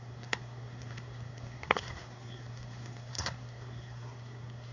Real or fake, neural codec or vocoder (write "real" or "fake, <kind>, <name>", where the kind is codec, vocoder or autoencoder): fake, codec, SNAC